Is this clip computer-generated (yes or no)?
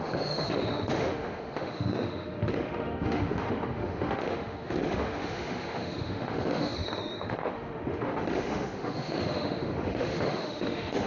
yes